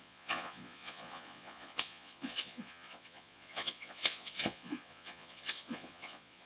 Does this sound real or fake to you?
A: fake